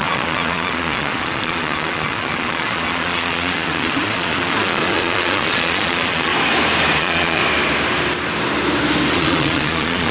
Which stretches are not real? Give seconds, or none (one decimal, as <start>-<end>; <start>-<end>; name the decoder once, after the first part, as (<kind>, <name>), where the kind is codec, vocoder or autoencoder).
0.0-6.3 (vocoder, Vocos); 7.0-7.4; 9.1-10.1